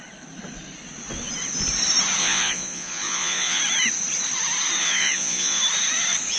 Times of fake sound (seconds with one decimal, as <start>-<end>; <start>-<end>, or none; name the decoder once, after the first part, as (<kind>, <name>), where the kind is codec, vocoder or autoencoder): 2.2-3.6 (vocoder, Vocos); 4.8-5.6